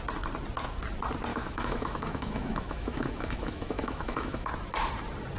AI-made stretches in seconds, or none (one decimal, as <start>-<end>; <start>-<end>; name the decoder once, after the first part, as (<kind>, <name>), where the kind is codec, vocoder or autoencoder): 1.3-4.5 (autoencoder, DAC-VAE)